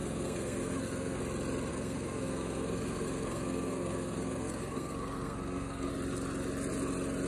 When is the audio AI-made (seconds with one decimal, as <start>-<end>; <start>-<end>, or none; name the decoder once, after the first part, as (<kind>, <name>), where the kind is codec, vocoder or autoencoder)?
0.0-1.2 (codec, SNAC); 1.7-5.9